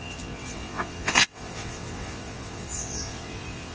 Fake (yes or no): yes